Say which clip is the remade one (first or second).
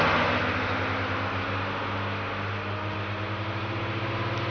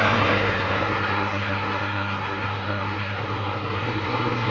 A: second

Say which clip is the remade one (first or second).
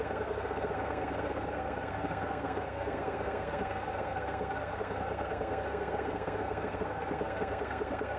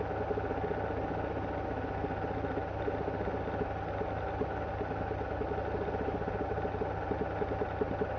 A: first